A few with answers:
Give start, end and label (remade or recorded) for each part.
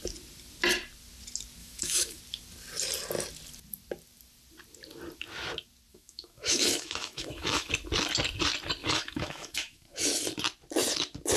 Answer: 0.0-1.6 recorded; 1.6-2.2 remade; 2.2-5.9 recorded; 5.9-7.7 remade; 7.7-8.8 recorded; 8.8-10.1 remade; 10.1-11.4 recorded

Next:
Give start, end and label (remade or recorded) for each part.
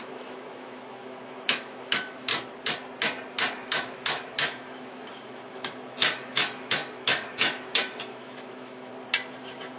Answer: 0.0-2.3 remade; 2.3-3.5 recorded; 3.5-8.9 remade; 8.9-9.4 recorded; 9.4-9.8 remade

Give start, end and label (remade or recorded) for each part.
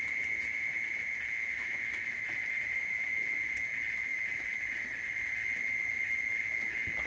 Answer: 0.0-1.5 recorded; 1.5-2.2 remade; 2.2-7.1 recorded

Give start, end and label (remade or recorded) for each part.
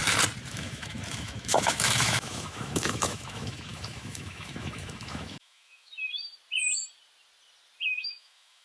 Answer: 0.0-0.5 recorded; 0.5-5.9 remade; 5.9-7.9 recorded; 7.9-8.6 remade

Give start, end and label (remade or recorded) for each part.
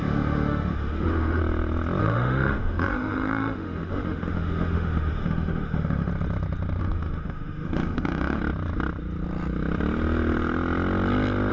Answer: 0.0-1.4 remade; 1.4-2.0 recorded; 2.0-6.1 remade; 6.1-6.8 recorded; 6.8-8.4 remade; 8.4-11.5 recorded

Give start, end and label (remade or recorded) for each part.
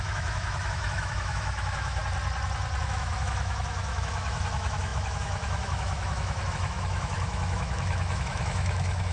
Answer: 0.0-2.0 remade; 2.0-2.8 recorded; 2.8-9.1 remade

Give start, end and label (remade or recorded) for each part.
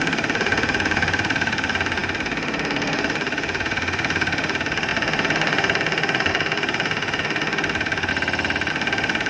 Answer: 0.0-8.1 remade; 8.1-8.7 recorded; 8.7-9.3 remade